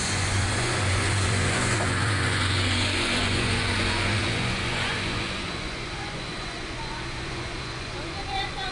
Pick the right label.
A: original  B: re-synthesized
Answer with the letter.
B